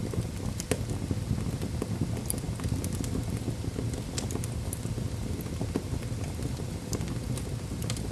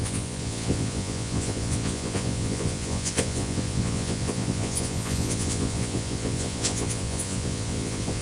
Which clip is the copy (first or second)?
second